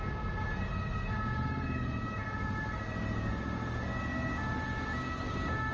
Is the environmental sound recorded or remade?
recorded